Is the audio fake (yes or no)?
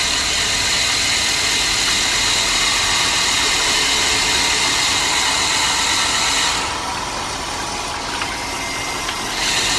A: no